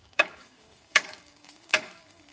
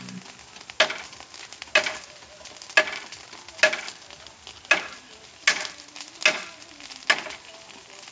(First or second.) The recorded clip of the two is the second